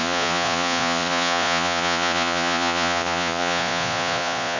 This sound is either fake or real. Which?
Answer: fake